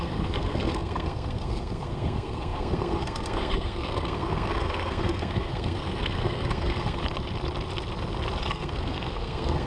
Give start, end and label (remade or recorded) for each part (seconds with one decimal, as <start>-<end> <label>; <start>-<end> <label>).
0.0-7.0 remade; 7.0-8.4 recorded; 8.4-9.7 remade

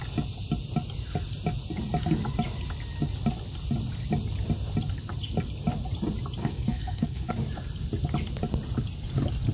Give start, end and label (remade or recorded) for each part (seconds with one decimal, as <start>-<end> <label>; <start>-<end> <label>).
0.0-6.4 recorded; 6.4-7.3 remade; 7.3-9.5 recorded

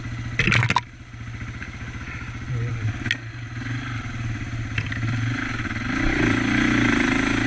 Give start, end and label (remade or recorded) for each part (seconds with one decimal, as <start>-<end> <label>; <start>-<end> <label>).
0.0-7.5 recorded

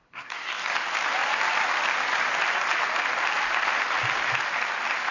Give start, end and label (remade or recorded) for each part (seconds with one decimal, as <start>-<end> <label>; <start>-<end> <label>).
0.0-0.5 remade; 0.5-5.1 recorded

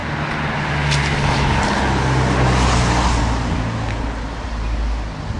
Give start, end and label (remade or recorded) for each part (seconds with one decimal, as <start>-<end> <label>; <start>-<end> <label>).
0.0-5.4 recorded

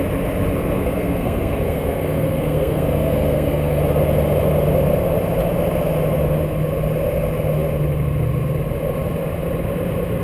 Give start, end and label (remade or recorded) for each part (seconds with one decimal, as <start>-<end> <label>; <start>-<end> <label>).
0.0-0.6 recorded; 0.6-3.8 remade; 3.8-10.2 recorded

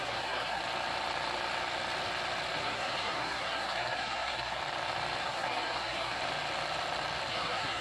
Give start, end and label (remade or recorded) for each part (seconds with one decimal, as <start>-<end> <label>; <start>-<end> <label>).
0.0-0.6 remade; 0.6-2.6 recorded; 2.6-4.6 remade; 4.6-5.2 recorded; 5.2-6.2 remade; 6.2-7.3 recorded; 7.3-7.8 remade